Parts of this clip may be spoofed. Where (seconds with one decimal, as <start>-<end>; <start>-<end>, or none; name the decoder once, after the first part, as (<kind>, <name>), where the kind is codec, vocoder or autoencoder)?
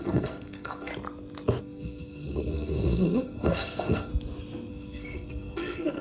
0.0-0.9 (codec, SNAC); 1.6-4.1; 4.7-6.0